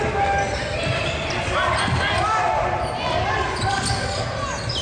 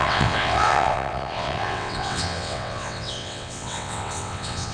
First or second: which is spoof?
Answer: second